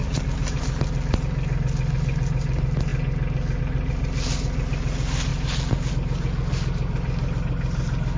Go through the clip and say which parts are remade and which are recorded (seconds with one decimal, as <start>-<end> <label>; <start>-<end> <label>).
0.0-8.2 recorded